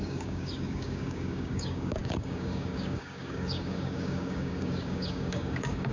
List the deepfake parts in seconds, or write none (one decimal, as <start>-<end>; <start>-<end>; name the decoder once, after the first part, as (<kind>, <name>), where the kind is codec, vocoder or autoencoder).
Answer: 0.0-5.9 (codec, DAC)